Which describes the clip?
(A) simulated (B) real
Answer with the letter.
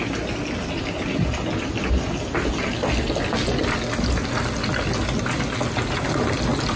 B